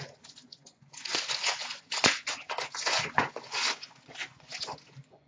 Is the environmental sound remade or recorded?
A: remade